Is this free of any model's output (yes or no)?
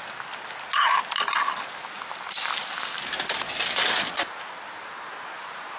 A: yes